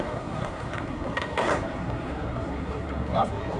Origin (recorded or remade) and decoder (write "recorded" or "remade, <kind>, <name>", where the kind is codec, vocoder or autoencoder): remade, codec, SNAC